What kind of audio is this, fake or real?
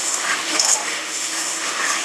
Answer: fake